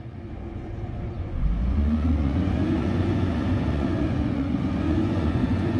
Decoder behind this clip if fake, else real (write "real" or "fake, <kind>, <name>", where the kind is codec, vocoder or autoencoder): fake, vocoder, Vocos